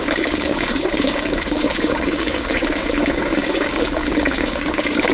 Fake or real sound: fake